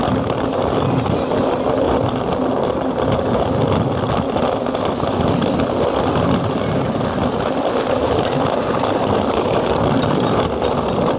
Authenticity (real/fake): real